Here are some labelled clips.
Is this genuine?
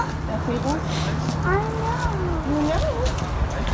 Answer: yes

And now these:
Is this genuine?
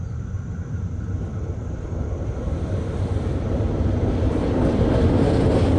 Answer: no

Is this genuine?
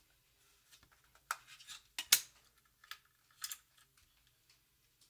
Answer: yes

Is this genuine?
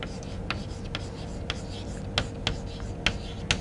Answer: yes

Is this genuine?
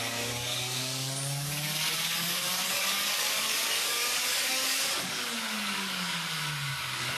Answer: no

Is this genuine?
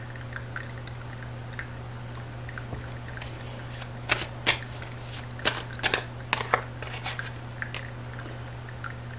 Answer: yes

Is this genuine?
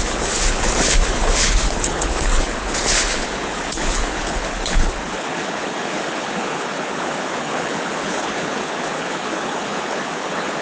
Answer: no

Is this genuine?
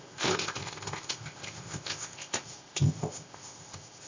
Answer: no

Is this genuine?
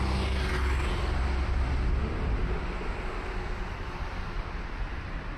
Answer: yes